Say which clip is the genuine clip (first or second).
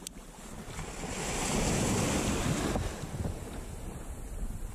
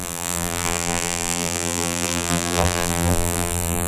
first